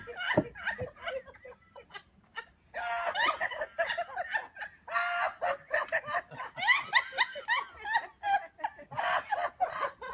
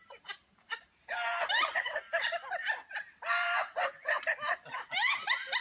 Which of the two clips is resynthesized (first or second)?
second